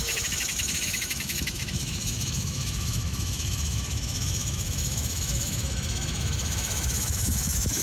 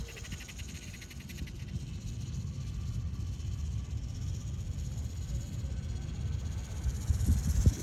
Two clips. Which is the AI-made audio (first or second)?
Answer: first